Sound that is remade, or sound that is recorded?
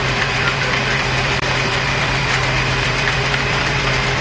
remade